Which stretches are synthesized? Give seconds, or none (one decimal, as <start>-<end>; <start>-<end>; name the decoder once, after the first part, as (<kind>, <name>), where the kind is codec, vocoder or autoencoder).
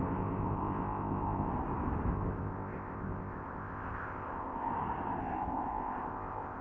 0.0-1.5 (codec, ZipCodec); 2.1-4.7; 5.2-6.6